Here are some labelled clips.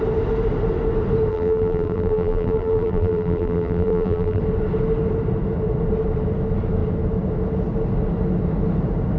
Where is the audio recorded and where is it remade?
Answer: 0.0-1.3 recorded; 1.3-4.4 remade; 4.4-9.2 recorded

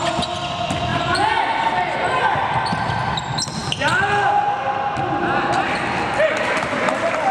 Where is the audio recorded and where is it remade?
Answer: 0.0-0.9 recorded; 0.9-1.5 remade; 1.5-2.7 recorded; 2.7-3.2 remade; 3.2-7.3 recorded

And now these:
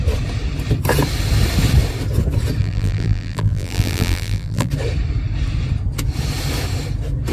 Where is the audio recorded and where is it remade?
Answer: 0.0-2.6 recorded; 2.6-4.7 remade; 4.7-7.3 recorded